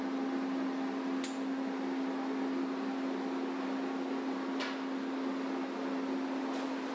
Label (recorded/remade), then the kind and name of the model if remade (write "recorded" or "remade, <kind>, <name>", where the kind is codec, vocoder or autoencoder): recorded